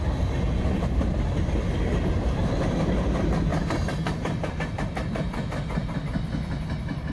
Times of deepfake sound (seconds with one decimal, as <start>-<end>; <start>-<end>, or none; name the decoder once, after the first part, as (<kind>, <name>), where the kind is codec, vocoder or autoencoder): 3.5-4.6 (vocoder, BigVGAN v2)